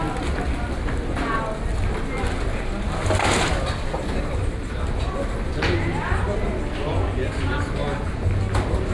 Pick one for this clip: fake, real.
real